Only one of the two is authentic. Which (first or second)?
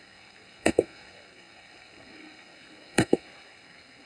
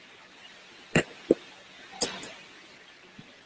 second